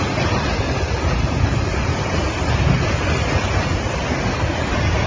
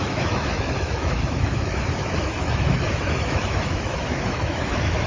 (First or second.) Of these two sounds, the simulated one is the second